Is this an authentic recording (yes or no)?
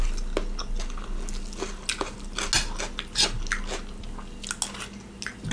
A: yes